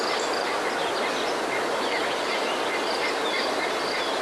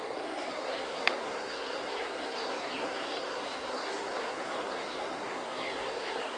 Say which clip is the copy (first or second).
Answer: second